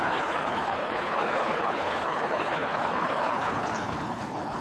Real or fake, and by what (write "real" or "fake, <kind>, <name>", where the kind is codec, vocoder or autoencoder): fake, codec, HILCodec